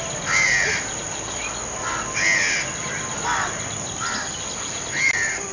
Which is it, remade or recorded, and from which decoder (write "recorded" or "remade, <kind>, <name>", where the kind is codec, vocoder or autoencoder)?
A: recorded